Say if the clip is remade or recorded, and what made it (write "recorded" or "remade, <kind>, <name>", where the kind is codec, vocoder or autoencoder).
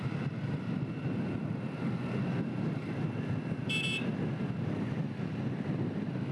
recorded